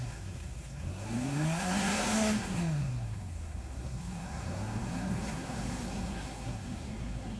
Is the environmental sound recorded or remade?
remade